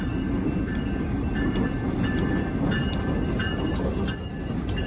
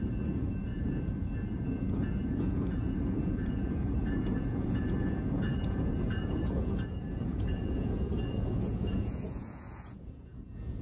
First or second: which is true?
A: first